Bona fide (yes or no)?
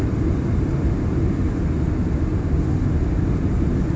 yes